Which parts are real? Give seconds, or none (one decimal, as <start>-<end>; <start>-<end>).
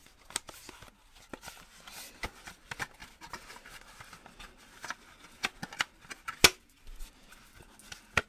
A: 0.0-8.3